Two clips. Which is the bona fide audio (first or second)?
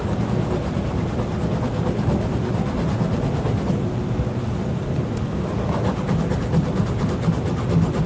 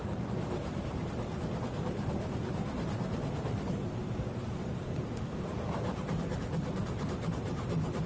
first